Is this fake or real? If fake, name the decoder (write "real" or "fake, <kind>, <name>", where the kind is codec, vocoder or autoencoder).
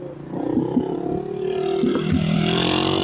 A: real